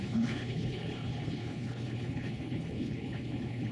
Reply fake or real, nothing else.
fake